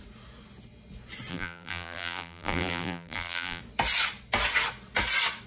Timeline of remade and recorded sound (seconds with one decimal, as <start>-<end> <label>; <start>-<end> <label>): 0.0-1.3 recorded; 1.3-3.6 remade; 3.6-5.5 recorded